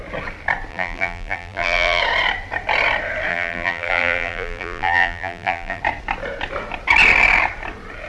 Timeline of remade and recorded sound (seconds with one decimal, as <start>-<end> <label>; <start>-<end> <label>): 0.0-0.7 recorded; 0.7-2.0 remade; 2.0-3.3 recorded; 3.3-5.8 remade; 5.8-8.1 recorded